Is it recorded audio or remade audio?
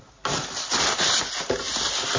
recorded